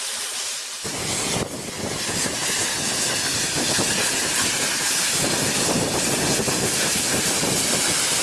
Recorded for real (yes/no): yes